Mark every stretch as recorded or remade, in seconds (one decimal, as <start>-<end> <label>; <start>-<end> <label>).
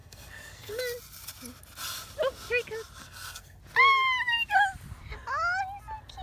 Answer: 0.0-0.8 remade; 0.8-3.0 recorded; 3.0-3.6 remade; 3.6-6.2 recorded